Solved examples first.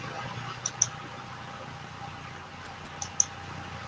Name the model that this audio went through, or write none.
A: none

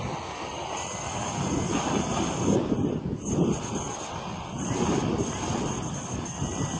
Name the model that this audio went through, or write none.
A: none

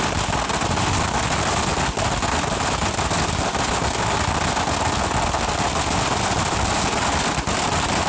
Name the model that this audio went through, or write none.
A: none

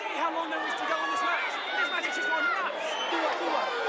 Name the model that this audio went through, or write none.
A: none